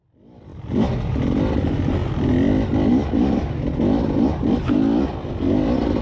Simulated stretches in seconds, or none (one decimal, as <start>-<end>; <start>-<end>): none